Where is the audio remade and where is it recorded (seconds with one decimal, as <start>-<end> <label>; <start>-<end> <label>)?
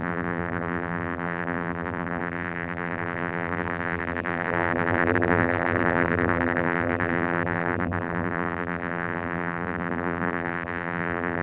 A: 0.0-11.4 remade